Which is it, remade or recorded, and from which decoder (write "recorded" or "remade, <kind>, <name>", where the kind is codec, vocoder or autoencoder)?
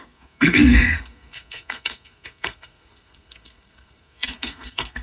remade, codec, SNAC